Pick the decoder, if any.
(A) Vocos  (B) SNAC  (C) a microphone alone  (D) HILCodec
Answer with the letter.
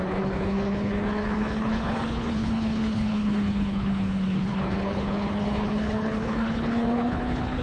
D